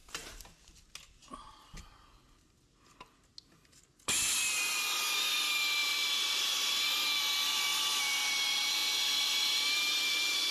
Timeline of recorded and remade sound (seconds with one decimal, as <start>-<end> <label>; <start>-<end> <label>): 0.0-0.7 remade; 0.7-5.8 recorded; 5.8-6.4 remade; 6.4-10.5 recorded